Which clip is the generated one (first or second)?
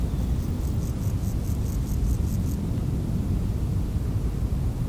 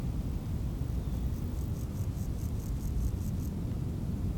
second